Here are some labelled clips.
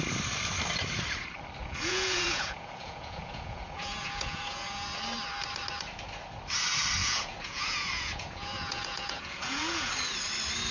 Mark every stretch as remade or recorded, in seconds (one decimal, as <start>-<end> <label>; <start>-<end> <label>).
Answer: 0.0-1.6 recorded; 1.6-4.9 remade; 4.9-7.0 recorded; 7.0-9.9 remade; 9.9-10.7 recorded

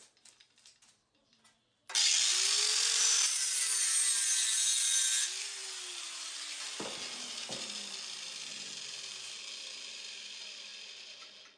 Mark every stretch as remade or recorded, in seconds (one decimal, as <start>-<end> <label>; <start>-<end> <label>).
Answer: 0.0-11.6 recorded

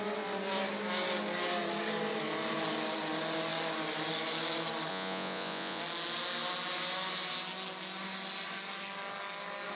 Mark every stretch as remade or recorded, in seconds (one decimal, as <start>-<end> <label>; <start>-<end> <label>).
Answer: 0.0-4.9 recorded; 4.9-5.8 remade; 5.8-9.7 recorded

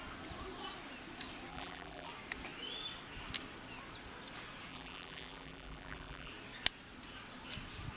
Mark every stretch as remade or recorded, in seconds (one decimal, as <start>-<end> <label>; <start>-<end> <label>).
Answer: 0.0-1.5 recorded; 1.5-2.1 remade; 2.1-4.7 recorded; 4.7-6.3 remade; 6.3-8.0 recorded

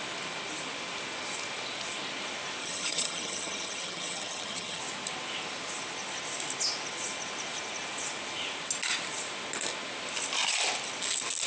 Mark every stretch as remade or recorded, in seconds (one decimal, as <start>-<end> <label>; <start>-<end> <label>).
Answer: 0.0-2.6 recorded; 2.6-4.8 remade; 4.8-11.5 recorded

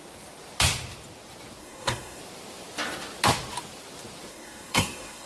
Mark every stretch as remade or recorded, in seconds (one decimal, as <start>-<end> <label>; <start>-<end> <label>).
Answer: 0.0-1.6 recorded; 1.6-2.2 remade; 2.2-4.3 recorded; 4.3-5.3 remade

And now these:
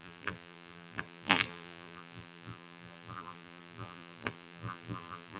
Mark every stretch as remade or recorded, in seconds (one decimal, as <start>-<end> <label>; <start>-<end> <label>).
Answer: 0.0-5.4 remade

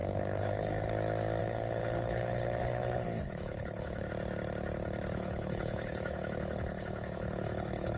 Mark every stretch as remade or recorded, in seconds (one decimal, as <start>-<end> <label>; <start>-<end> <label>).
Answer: 0.0-0.9 remade; 0.9-1.4 recorded; 1.4-4.1 remade; 4.1-5.1 recorded; 5.1-8.0 remade